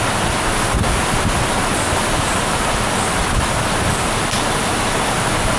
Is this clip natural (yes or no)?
yes